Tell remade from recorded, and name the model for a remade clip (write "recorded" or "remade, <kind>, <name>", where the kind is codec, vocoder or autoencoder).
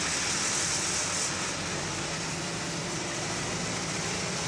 recorded